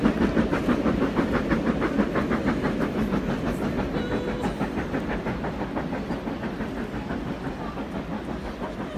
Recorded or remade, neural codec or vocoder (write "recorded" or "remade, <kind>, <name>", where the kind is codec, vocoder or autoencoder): recorded